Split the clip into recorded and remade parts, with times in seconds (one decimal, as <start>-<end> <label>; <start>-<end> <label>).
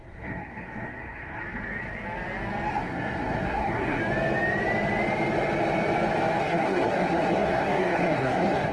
0.0-1.4 remade; 1.4-2.7 recorded; 2.7-4.0 remade; 4.0-6.4 recorded; 6.4-8.7 remade